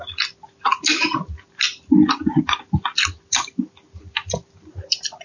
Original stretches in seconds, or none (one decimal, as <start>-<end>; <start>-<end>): 0.0-5.2

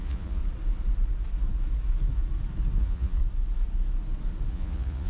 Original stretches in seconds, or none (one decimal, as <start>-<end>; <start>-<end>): 0.4-2.8; 3.2-4.5

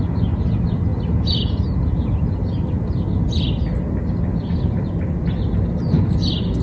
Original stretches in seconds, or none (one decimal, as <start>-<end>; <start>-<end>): 0.0-6.6

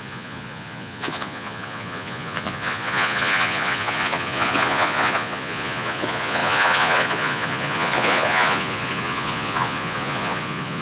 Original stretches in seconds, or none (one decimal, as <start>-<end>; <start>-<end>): none

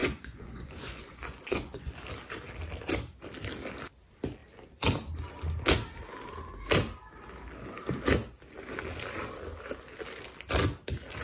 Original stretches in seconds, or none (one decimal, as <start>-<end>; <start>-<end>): 2.0-11.2